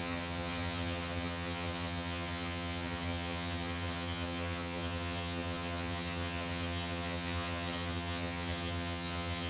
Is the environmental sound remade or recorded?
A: remade